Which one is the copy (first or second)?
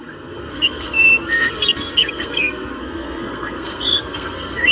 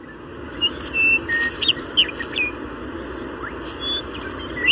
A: first